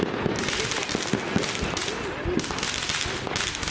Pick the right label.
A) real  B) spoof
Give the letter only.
A